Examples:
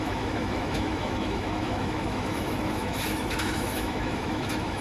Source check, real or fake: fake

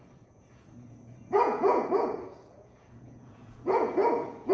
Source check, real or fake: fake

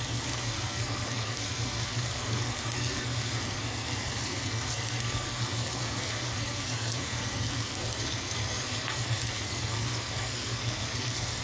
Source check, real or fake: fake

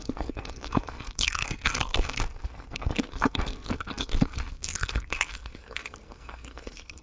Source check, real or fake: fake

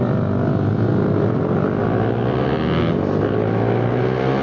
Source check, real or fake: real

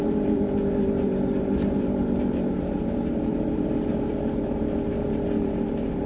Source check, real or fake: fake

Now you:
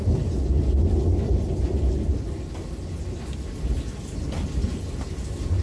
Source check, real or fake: real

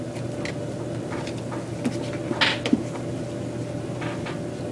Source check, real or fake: real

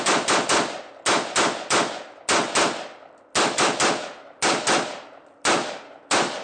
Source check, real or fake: real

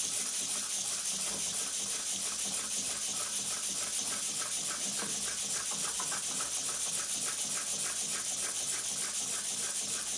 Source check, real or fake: real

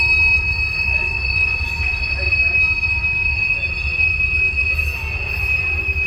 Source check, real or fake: real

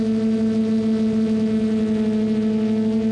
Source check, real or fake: real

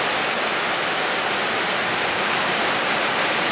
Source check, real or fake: real